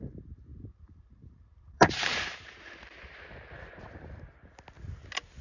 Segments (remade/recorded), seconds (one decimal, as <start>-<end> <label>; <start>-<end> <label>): 0.0-0.5 recorded; 0.5-3.2 remade; 3.2-5.4 recorded